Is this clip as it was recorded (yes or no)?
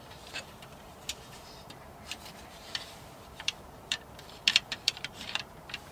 no